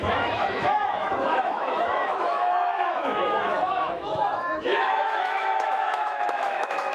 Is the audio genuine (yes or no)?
no